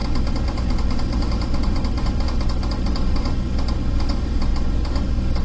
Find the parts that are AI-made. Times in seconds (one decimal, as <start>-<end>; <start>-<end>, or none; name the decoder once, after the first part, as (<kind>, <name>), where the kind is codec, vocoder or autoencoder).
none